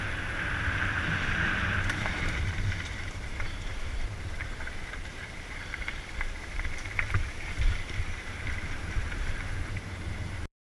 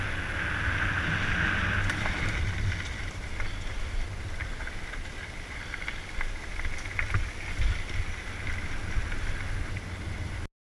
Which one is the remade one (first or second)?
first